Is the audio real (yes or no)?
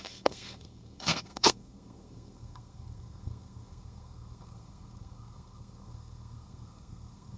no